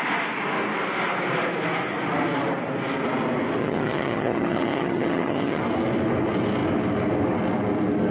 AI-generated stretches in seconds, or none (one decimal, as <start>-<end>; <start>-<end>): 3.6-5.6